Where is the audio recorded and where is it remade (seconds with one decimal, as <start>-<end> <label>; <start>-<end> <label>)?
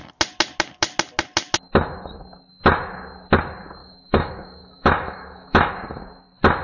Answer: 0.0-3.8 recorded; 3.8-5.7 remade; 5.7-6.6 recorded